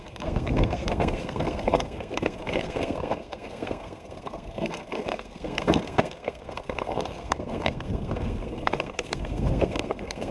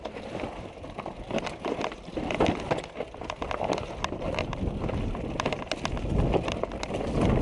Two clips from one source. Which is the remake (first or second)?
first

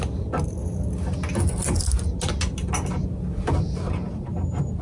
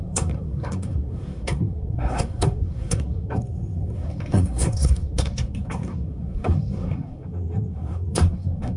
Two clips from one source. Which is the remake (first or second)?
second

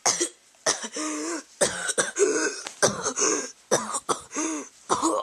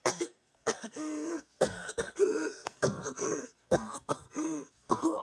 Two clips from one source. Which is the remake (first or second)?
second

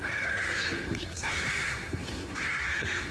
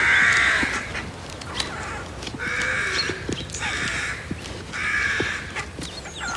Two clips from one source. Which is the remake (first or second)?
first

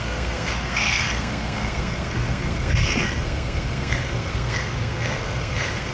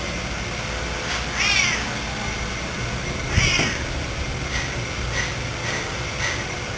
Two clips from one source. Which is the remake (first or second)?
first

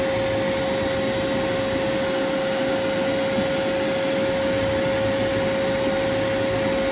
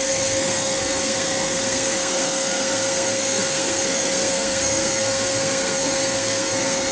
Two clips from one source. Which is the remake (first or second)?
second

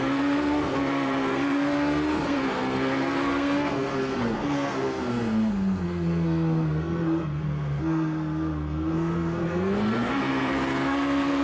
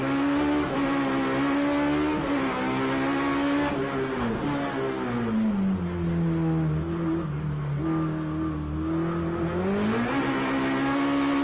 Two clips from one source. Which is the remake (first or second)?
first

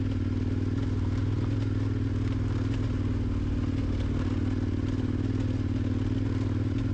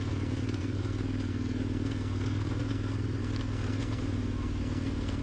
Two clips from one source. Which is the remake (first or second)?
second